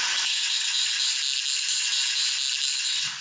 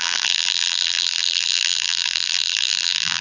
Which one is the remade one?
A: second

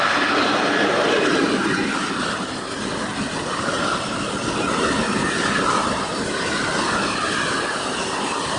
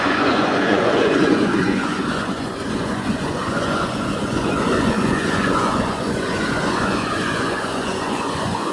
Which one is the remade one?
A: second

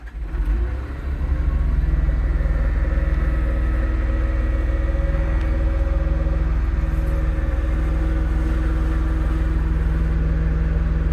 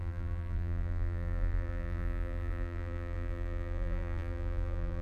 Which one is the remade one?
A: second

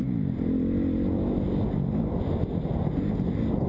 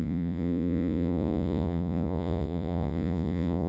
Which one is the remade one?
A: second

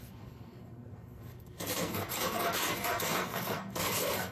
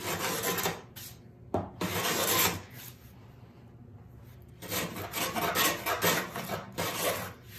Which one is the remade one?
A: first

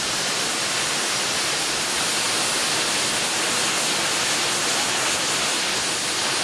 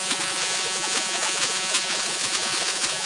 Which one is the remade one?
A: second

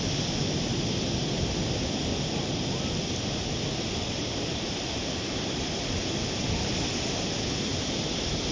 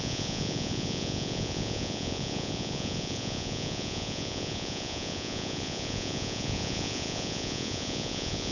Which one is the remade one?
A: second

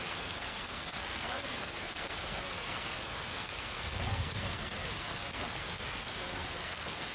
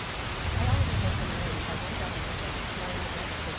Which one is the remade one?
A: first